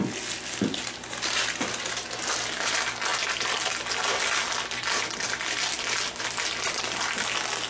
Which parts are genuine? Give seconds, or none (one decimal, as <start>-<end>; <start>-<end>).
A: 0.0-7.7

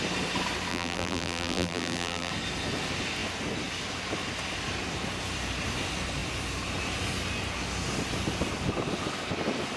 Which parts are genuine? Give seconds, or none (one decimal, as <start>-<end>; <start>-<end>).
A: 0.0-0.7; 2.3-9.8

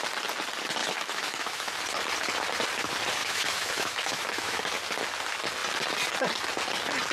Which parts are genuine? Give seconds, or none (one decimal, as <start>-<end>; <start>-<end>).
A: 0.0-0.8; 1.7-3.2; 4.6-7.1

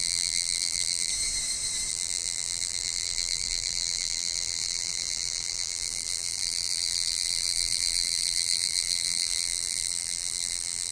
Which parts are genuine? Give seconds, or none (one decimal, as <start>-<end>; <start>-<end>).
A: 1.1-1.9